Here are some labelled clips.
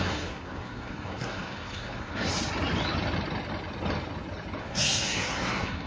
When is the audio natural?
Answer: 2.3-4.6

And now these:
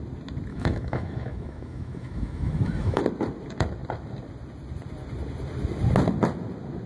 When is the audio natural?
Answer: 0.0-0.5; 3.0-6.9

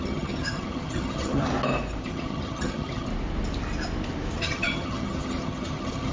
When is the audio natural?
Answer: 1.5-2.0; 3.1-4.4